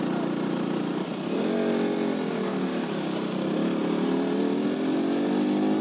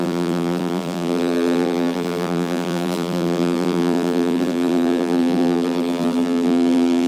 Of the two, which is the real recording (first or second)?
first